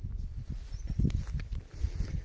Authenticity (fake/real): fake